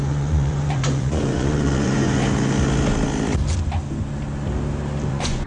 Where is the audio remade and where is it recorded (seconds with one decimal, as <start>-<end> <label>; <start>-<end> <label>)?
0.0-2.2 remade; 2.2-5.1 recorded; 5.1-5.5 remade